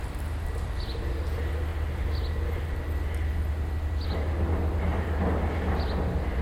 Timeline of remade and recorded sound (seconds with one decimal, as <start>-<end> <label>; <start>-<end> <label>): 0.0-6.4 recorded